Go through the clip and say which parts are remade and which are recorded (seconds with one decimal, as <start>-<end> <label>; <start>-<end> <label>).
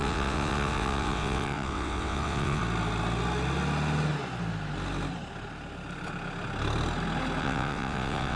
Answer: 0.0-2.6 remade; 2.6-7.4 recorded; 7.4-8.4 remade